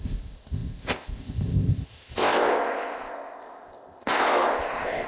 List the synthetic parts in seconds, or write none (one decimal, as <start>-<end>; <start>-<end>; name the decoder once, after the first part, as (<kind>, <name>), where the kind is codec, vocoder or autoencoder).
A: 0.0-5.1 (codec, ZipCodec)